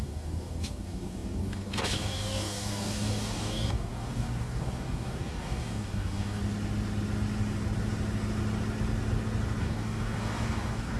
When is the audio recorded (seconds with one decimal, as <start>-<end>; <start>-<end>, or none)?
6.4-9.6